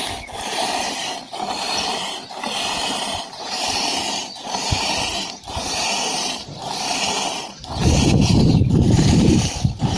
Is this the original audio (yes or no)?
no